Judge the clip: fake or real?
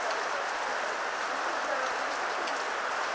real